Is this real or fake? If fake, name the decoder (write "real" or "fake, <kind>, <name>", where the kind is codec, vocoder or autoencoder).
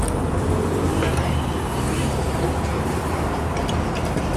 fake, vocoder, BigVGAN v2